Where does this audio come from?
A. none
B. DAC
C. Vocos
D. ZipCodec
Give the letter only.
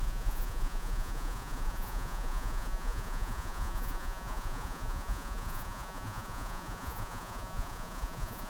C